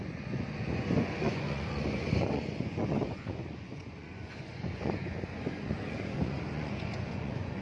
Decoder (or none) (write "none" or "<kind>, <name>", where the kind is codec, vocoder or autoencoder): vocoder, Vocos